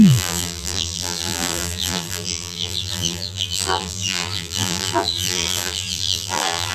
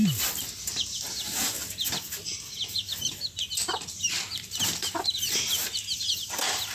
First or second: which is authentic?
second